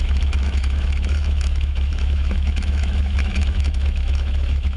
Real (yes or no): no